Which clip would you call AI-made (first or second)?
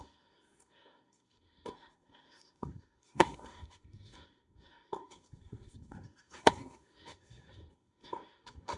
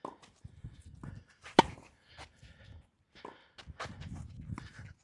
first